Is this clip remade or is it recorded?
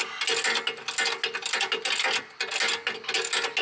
recorded